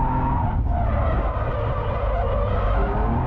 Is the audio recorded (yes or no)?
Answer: yes